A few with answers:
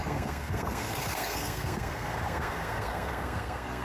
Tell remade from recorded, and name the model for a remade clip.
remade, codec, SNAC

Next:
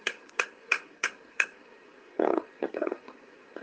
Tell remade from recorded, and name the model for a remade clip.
remade, codec, SNAC